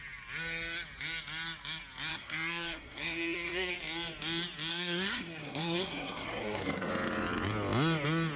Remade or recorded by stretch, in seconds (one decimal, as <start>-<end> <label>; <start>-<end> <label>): 0.0-2.1 recorded; 2.1-3.7 remade; 3.7-4.7 recorded; 4.7-6.9 remade; 6.9-8.4 recorded